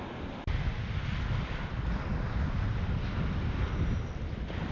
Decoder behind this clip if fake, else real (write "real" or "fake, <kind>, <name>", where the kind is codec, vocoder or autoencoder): real